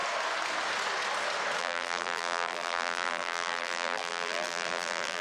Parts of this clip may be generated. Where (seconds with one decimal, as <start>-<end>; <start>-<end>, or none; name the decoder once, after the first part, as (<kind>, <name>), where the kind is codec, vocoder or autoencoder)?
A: 1.6-5.2 (vocoder, BigVGAN v2)